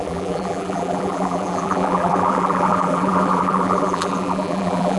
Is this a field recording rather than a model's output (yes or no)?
no